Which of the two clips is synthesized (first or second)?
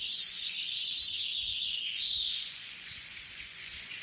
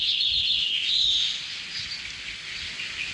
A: first